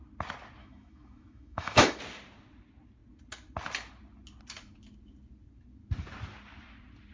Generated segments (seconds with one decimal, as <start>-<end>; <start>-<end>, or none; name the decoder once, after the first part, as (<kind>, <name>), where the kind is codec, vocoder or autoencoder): 0.6-2.0 (autoencoder, DAC-VAE)